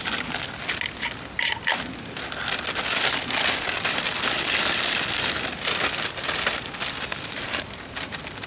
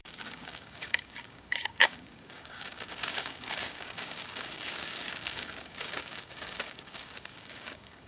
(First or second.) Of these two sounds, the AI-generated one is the second